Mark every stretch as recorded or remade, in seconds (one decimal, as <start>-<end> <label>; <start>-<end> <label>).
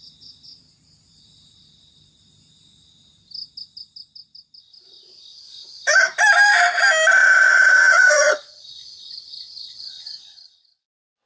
0.0-7.2 recorded; 7.2-10.8 remade; 10.8-11.3 recorded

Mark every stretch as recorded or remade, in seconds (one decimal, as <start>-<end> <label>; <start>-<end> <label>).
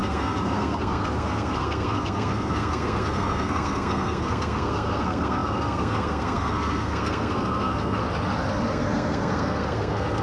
0.0-8.0 remade; 8.0-8.7 recorded; 8.7-10.2 remade